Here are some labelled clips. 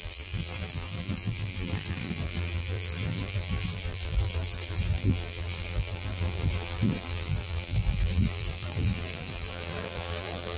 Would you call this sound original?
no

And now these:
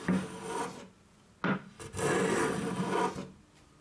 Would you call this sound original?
yes